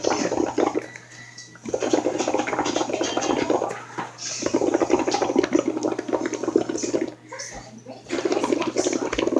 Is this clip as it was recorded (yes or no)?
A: yes